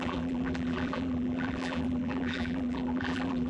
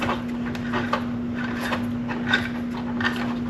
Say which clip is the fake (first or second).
first